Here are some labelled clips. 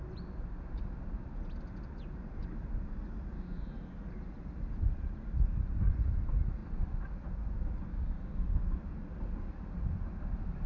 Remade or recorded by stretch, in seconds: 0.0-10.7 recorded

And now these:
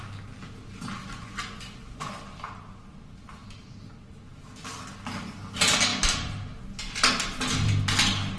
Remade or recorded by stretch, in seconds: 0.0-1.0 recorded; 1.0-2.1 remade; 2.1-8.4 recorded

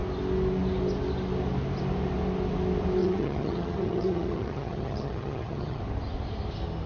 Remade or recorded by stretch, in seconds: 0.0-3.0 recorded; 3.0-5.8 remade; 5.8-6.9 recorded

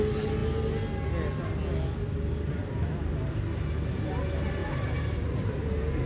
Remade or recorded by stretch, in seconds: 0.0-2.6 recorded; 2.6-3.3 remade; 3.3-4.6 recorded; 4.6-6.1 remade

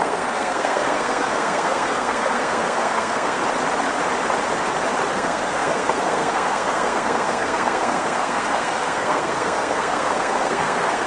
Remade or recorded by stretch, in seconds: 0.0-3.4 remade; 3.4-5.1 recorded; 5.1-11.1 remade

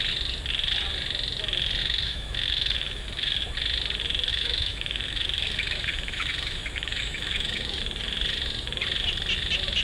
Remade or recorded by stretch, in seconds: 0.0-1.8 recorded; 1.8-3.4 remade; 3.4-4.3 recorded; 4.3-7.8 remade; 7.8-9.8 recorded

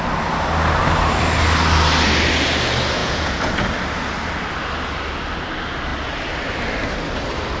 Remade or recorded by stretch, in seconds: 0.0-3.0 recorded; 3.0-3.5 remade; 3.5-7.6 recorded

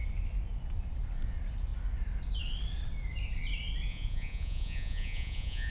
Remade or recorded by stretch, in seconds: 0.0-3.9 recorded; 3.9-5.7 remade